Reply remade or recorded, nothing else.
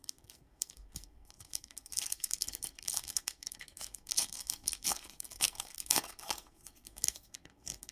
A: remade